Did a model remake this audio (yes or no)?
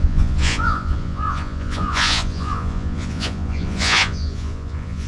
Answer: yes